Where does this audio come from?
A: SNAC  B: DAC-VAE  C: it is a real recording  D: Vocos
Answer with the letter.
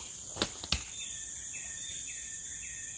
C